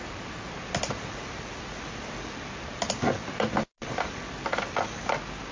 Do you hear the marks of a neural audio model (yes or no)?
no